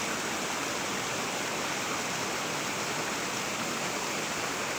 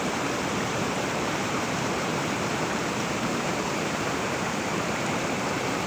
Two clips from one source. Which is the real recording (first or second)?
first